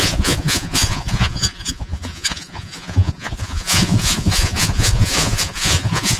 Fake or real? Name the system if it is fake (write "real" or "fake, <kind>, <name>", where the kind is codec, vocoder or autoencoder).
fake, vocoder, Vocos